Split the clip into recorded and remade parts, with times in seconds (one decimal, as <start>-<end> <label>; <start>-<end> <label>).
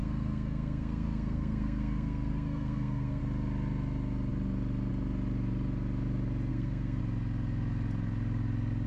0.0-3.2 remade; 3.2-6.5 recorded; 6.5-7.0 remade; 7.0-8.9 recorded